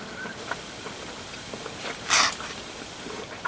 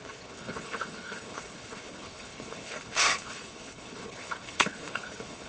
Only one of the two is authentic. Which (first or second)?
first